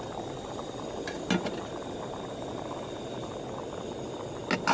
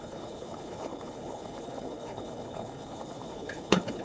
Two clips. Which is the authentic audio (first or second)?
first